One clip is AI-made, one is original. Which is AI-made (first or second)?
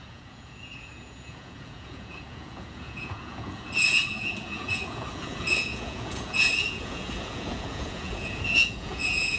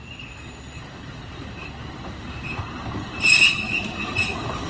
first